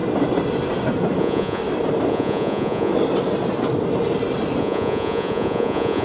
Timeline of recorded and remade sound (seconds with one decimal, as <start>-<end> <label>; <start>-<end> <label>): 0.0-1.2 recorded; 1.2-1.6 remade; 1.6-2.1 recorded; 2.1-2.9 remade; 2.9-4.6 recorded; 4.6-6.0 remade